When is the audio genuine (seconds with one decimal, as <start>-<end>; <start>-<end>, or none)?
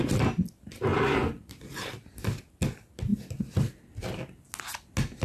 0.0-0.9; 2.1-5.2